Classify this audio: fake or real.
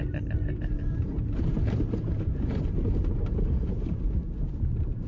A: fake